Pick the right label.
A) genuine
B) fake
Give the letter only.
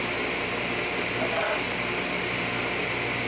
A